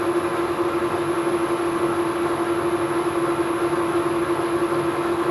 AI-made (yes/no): no